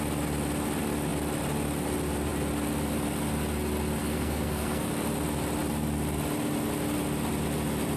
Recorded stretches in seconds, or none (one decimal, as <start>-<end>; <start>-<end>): 0.0-4.0; 4.9-8.0